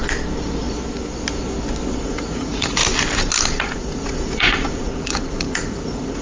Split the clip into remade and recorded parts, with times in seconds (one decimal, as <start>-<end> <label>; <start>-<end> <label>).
0.0-2.0 recorded; 2.0-2.8 remade; 2.8-3.5 recorded; 3.5-6.2 remade